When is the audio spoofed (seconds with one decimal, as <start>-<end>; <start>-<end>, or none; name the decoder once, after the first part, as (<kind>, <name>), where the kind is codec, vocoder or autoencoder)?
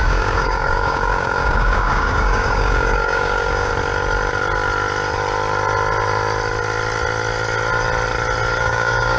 0.0-3.7 (codec, DAC); 8.6-9.2